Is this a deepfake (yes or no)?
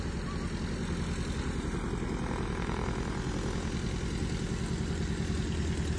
no